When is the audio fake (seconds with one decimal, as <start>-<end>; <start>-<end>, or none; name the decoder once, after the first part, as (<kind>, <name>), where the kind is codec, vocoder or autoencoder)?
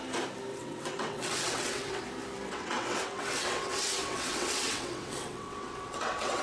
0.5-2.0 (vocoder, WaveNeXt); 2.5-6.4